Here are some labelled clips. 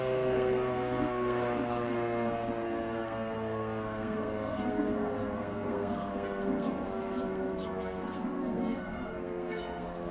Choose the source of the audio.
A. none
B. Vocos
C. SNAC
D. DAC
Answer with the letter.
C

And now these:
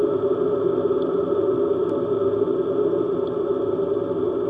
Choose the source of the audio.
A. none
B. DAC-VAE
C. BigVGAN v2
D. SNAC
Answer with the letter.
A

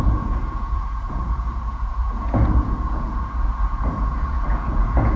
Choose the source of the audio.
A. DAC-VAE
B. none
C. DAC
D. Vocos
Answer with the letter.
D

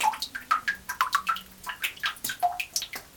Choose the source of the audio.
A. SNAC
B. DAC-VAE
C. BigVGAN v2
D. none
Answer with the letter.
D